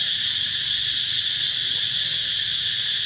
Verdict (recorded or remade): recorded